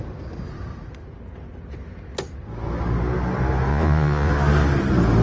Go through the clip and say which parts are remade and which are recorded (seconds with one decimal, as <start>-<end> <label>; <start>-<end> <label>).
0.0-3.7 recorded; 3.7-4.3 remade; 4.3-5.2 recorded